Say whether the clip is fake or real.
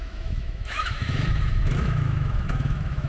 fake